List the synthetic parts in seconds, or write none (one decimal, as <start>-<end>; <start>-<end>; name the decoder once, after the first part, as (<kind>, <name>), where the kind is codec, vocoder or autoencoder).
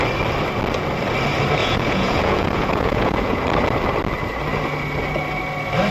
1.6-3.4 (vocoder, Vocos)